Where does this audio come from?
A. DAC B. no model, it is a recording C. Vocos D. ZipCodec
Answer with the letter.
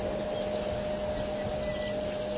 B